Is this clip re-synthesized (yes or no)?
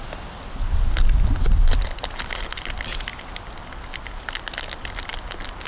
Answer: no